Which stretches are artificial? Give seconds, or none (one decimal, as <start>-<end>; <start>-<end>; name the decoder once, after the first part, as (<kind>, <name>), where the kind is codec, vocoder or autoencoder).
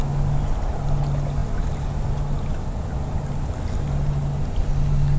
none